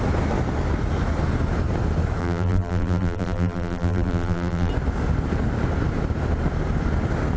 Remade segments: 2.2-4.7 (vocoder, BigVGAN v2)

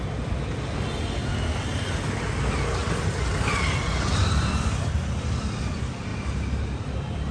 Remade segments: 2.8-4.5 (vocoder, BigVGAN v2); 6.1-7.3

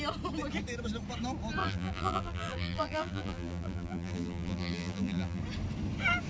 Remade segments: 1.6-5.4 (vocoder, BigVGAN v2)

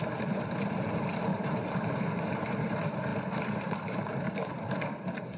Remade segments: 0.0-5.4 (vocoder, BigVGAN v2)

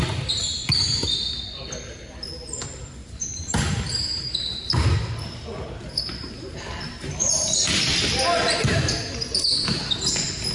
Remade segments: 3.0-3.5 (vocoder, BigVGAN v2); 7.2-8.1

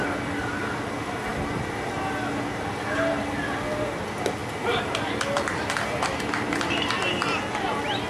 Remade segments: none

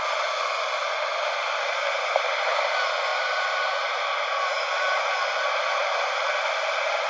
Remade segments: 3.1-6.3 (vocoder, BigVGAN v2)

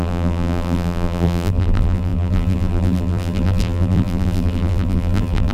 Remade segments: 0.0-5.5 (vocoder, BigVGAN v2)